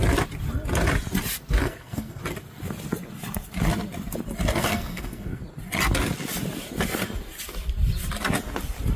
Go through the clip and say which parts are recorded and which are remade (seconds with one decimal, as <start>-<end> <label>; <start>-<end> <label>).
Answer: 0.0-1.6 recorded; 1.6-2.2 remade; 2.2-4.6 recorded; 4.6-5.4 remade; 5.4-9.0 recorded